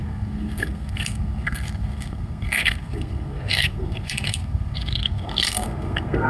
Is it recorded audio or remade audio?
remade